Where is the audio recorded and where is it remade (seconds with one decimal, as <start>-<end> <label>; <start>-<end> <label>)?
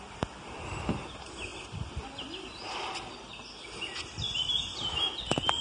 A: 0.0-5.6 recorded